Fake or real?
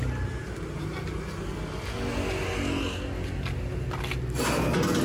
real